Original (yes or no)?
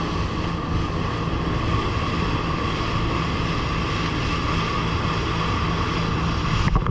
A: yes